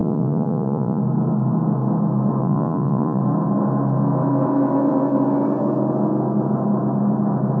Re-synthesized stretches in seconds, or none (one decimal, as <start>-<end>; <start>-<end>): 0.0-1.0; 2.4-3.2